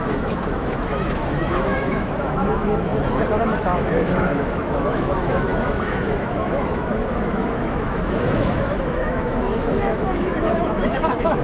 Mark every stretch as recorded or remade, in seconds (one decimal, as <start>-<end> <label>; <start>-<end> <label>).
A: 0.0-2.9 remade; 2.9-3.4 recorded; 3.4-11.4 remade